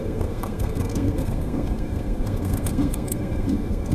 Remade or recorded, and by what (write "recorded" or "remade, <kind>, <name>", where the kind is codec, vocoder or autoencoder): remade, codec, SNAC